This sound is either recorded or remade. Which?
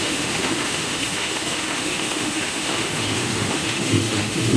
remade